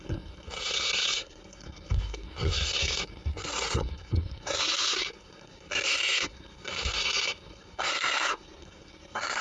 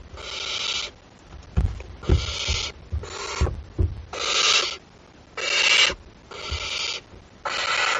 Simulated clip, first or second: first